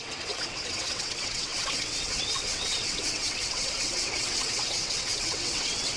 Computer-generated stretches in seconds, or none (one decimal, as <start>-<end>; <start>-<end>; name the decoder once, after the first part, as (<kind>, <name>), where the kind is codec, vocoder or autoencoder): 0.0-6.0 (vocoder, WaveNeXt)

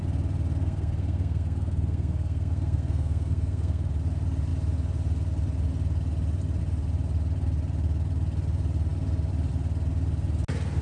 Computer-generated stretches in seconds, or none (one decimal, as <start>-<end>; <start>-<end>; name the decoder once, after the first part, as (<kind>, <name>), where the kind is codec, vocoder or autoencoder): 0.6-3.9 (codec, SNAC)

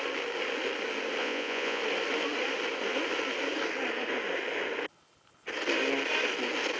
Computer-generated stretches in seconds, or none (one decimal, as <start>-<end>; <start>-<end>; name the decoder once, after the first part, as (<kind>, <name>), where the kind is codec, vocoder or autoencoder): 1.2-1.8 (vocoder, Vocos)

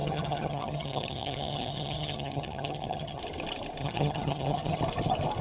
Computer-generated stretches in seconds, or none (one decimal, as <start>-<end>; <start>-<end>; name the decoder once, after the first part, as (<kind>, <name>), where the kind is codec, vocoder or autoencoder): 0.0-3.2 (vocoder, HiFi-GAN); 3.8-4.8

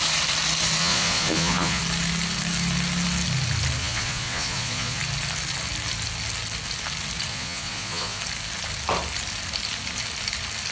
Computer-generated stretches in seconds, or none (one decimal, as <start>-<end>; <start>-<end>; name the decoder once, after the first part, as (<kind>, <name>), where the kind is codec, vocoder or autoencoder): 0.8-1.8 (vocoder, Vocos); 3.8-5.0; 7.3-8.2